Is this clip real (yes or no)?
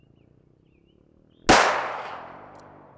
yes